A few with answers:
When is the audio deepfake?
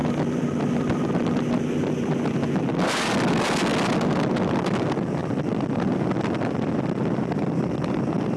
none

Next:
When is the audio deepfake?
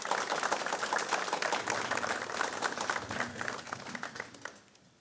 3.3-3.8 (codec, SNAC)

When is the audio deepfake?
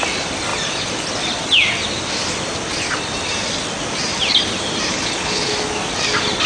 4.9-5.5 (codec, HILCodec)